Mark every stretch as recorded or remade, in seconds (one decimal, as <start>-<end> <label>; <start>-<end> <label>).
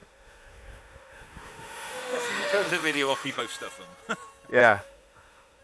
0.0-3.4 remade; 3.4-4.6 recorded; 4.6-5.6 remade